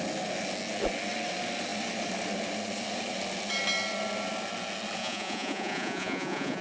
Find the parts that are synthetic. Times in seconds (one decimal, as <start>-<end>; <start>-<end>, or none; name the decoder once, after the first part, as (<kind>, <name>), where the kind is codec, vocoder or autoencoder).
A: 5.0-6.6 (vocoder, Vocos)